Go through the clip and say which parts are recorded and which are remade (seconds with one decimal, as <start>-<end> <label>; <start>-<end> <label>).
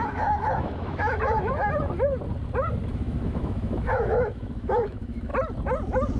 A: 0.0-1.5 remade; 1.5-2.9 recorded; 2.9-5.3 remade; 5.3-6.2 recorded